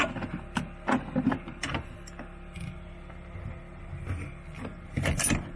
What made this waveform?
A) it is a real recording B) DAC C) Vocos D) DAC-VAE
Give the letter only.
A